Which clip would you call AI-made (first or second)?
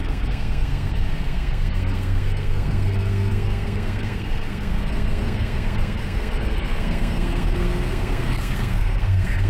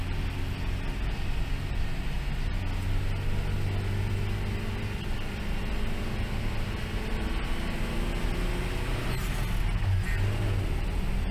first